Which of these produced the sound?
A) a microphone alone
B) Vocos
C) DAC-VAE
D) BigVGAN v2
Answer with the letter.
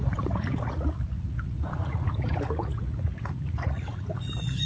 B